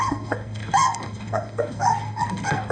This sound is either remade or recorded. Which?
remade